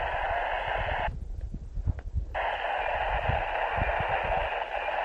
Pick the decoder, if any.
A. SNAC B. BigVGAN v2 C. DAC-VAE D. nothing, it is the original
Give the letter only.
D